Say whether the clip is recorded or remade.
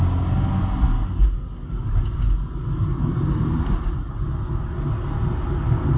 recorded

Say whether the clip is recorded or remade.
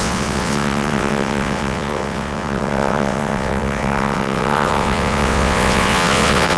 remade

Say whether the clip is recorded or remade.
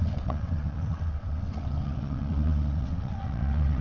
remade